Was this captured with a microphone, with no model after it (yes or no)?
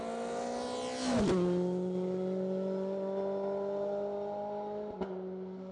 yes